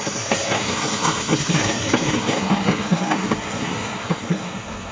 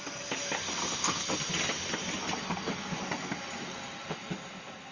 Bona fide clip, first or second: second